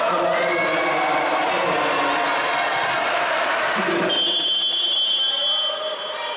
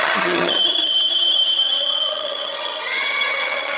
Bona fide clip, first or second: first